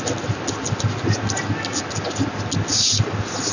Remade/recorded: recorded